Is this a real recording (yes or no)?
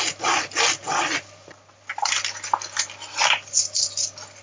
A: yes